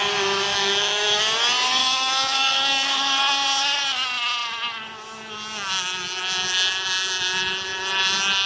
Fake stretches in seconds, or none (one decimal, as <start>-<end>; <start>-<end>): 0.5-1.2; 1.8-3.2